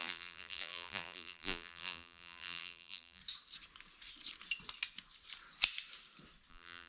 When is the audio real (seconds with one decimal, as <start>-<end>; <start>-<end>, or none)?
3.2-6.5

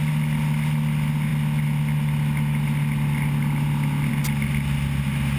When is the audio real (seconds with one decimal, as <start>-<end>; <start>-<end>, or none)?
0.0-5.4

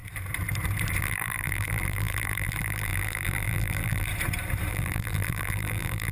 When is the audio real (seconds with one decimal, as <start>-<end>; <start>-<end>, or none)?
0.0-1.0; 4.1-4.7

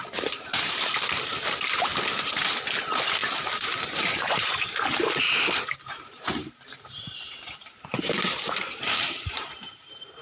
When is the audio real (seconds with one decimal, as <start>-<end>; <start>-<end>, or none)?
1.9-2.8

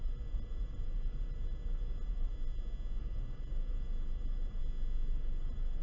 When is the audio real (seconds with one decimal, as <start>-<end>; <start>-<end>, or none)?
2.3-3.0; 4.6-5.1

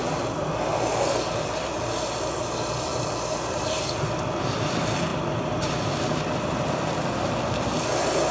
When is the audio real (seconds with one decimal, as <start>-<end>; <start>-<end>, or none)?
0.0-5.1; 7.2-8.3

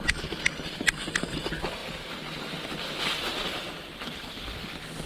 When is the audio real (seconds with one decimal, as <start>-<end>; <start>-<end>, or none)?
0.0-5.1

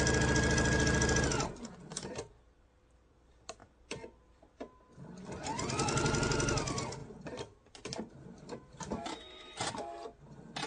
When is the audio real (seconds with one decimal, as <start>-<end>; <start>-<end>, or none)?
0.0-7.0; 9.7-10.7